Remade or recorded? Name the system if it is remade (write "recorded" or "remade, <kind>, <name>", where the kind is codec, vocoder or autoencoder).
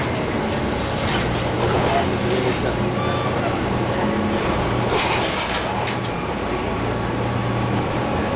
recorded